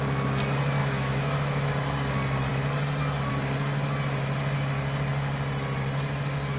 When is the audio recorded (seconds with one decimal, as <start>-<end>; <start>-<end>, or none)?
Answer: 0.0-0.8; 1.7-6.6